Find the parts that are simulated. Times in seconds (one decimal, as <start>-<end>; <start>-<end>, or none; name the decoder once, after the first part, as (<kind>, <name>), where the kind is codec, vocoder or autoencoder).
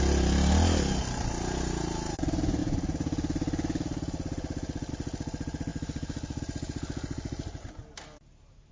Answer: none